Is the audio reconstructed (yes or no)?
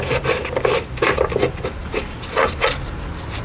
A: no